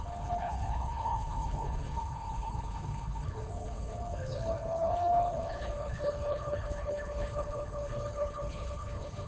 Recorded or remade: remade